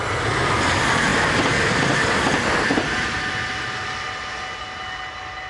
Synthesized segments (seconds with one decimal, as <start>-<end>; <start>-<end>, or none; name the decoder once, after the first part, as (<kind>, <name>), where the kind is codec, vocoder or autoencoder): none